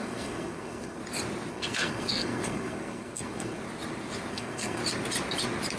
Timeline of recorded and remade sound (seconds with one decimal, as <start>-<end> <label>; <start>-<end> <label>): 0.0-1.0 remade; 1.0-1.5 recorded; 1.5-3.6 remade; 3.6-4.3 recorded; 4.3-4.8 remade; 4.8-5.8 recorded